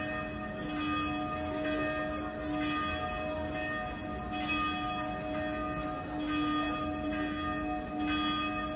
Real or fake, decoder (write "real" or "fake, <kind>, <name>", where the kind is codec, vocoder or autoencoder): real